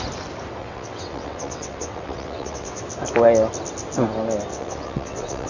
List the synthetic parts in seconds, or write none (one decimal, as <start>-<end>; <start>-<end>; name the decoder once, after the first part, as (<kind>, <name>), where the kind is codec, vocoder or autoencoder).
0.6-2.8 (vocoder, WaveNeXt); 4.5-5.5